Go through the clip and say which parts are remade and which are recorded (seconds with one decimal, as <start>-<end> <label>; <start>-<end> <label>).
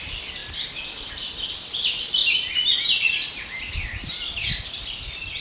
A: 0.0-5.4 recorded